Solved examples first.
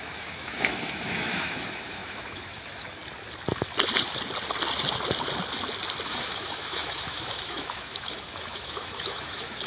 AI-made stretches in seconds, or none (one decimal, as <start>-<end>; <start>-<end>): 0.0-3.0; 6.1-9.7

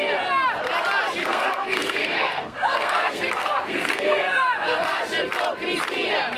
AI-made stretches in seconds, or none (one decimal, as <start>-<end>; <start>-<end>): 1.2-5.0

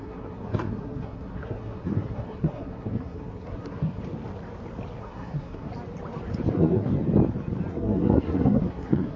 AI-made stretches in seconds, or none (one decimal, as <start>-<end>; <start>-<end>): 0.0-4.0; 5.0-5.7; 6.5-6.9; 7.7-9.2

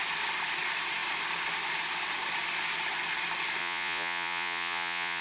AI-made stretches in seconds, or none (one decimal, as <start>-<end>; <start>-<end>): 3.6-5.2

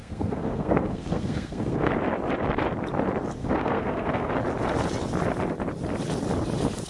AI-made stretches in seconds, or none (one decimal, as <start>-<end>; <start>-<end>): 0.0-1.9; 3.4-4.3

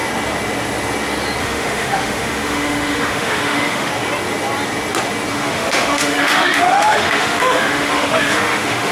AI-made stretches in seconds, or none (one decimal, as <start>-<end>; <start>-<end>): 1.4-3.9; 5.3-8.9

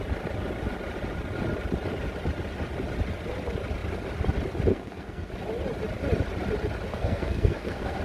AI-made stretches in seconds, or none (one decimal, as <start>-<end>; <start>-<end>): 4.7-5.3; 6.9-8.0